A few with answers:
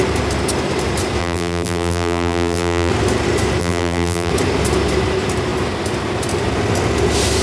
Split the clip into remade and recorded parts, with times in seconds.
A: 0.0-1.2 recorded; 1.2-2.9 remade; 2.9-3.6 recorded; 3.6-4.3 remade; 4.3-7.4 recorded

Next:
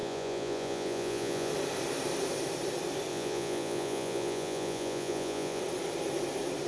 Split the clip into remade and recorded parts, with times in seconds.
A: 0.0-1.5 remade; 1.5-3.1 recorded; 3.1-5.6 remade; 5.6-6.7 recorded